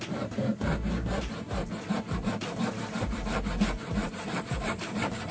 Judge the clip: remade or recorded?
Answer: remade